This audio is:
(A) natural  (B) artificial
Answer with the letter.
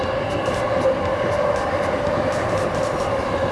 A